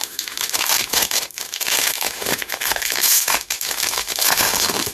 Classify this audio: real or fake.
fake